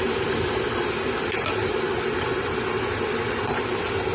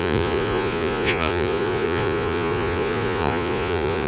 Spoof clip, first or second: second